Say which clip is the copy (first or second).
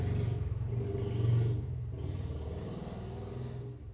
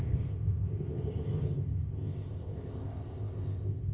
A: second